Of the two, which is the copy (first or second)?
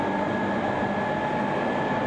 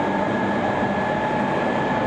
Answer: second